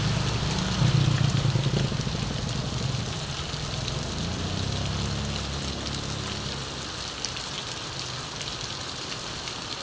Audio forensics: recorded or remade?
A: recorded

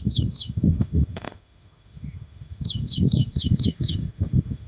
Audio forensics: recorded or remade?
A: remade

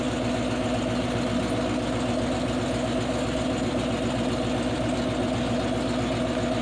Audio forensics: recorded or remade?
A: recorded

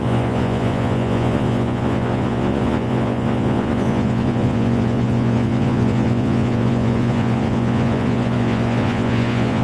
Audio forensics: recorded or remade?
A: remade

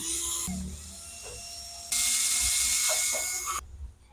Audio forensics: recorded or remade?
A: recorded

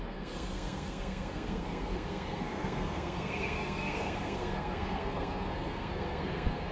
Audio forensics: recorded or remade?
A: remade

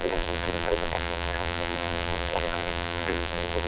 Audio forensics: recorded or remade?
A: remade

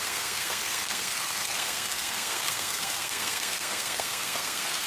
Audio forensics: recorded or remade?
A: remade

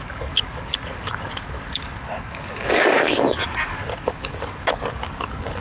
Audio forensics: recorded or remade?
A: remade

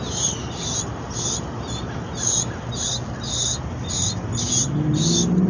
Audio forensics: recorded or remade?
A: recorded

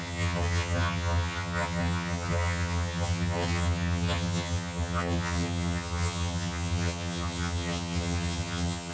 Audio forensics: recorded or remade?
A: remade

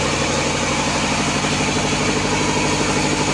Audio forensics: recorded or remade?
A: recorded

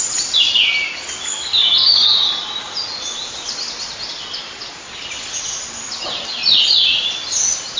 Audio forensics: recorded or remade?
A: recorded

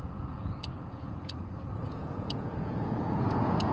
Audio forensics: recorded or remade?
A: remade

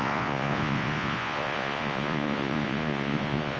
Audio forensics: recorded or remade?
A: remade